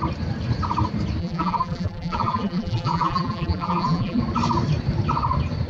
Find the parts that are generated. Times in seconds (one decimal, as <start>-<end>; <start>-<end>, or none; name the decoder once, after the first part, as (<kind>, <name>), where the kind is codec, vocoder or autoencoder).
1.2-4.2 (vocoder, BigVGAN v2)